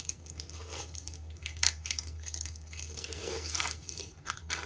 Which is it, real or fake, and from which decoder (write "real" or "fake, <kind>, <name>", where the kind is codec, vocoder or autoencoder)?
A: fake, codec, SNAC